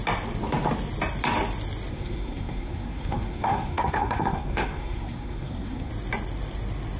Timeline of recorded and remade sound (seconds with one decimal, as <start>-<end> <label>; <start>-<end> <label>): 0.0-1.9 recorded; 1.9-5.9 remade; 5.9-7.0 recorded